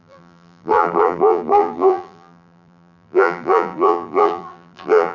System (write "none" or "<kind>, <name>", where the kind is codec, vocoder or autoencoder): vocoder, BigVGAN v2